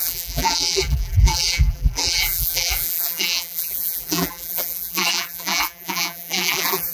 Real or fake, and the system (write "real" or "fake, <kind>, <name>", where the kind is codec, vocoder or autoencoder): fake, vocoder, BigVGAN v2